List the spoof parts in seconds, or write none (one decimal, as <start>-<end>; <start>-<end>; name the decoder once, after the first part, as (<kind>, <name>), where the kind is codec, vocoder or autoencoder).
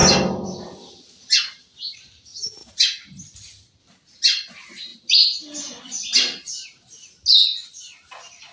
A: 2.6-4.5 (vocoder, BigVGAN v2)